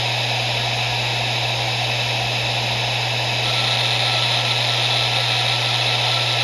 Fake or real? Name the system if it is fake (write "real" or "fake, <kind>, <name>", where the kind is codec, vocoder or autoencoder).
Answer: real